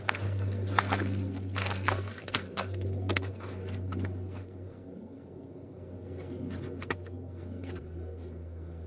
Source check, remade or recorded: remade